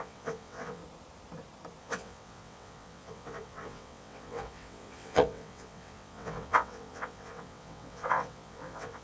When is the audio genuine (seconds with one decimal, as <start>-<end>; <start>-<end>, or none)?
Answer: 0.8-1.8